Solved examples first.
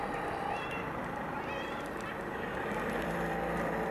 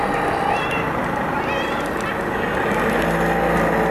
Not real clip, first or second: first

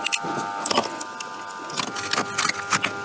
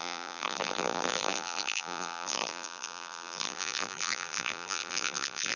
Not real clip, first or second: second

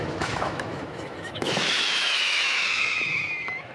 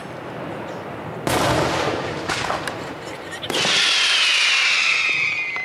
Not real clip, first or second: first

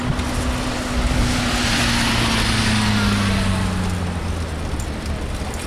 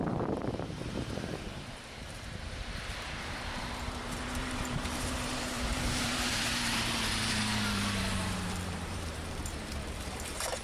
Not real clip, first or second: second